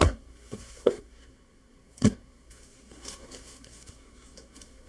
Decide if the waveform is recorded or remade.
remade